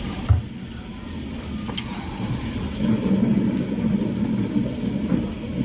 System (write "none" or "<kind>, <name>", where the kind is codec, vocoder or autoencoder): none